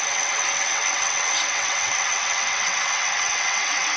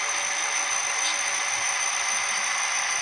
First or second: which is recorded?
second